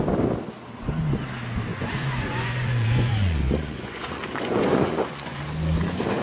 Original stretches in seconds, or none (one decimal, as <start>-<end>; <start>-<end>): 0.0-1.7; 5.4-6.2